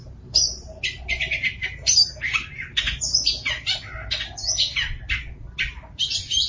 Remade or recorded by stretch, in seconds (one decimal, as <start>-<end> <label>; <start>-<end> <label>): 0.0-1.0 remade; 1.0-1.6 recorded; 1.6-3.8 remade; 3.8-6.5 recorded